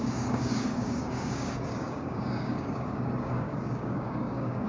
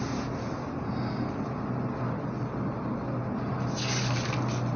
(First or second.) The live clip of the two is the second